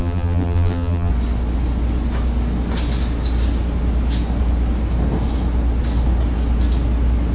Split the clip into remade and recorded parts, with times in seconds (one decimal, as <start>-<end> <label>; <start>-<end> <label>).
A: 0.0-1.1 remade; 1.1-7.3 recorded